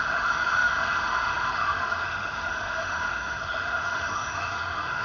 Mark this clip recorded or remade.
remade